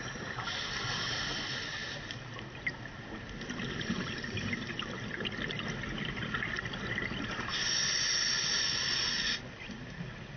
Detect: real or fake real